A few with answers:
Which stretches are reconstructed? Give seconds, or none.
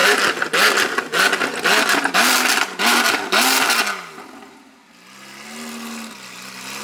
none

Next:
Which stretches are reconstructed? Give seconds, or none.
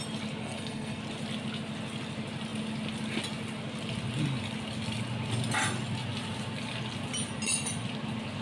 0.4-1.0 (codec, SNAC)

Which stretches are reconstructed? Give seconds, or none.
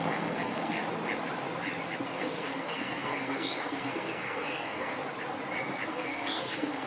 0.0-0.8 (codec, SNAC); 2.1-5.0; 5.9-6.9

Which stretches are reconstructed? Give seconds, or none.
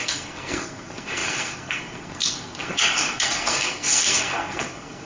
0.0-5.1 (codec, SNAC)